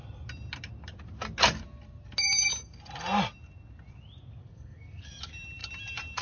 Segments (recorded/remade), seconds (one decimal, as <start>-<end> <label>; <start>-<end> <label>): 0.0-4.4 recorded; 4.4-5.1 remade; 5.1-6.2 recorded